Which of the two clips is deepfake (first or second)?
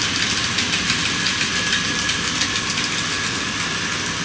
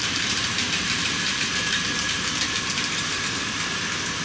second